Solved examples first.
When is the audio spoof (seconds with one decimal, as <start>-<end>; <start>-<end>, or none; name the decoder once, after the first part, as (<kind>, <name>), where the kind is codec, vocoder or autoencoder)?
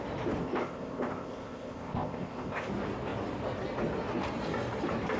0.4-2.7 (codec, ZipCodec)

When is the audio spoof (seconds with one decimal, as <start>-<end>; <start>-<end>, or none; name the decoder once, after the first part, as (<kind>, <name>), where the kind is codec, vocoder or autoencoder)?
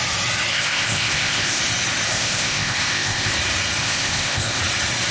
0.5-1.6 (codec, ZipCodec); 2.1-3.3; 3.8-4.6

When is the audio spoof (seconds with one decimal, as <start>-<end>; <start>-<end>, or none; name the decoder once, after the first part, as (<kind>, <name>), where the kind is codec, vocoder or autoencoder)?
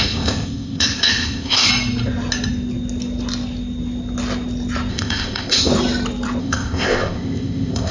0.0-1.7 (codec, ZipCodec); 4.9-5.7; 6.4-7.9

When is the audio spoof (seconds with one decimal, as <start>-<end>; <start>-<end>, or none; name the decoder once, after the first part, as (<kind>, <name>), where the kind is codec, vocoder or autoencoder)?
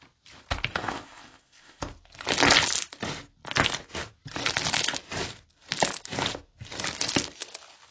0.7-1.8 (codec, ZipCodec)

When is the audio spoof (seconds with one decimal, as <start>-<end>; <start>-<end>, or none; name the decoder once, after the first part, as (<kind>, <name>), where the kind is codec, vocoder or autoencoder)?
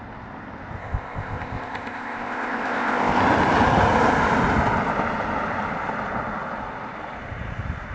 0.8-3.2 (codec, ZipCodec)